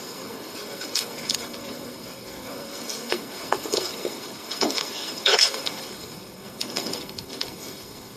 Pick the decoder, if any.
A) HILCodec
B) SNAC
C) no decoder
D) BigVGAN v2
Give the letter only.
B